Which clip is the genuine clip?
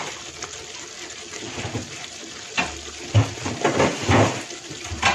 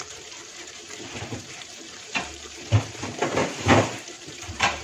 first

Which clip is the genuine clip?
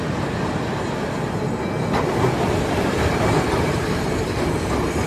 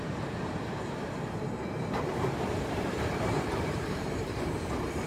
first